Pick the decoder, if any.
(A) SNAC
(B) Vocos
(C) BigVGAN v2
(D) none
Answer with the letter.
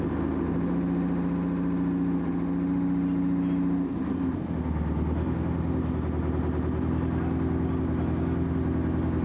D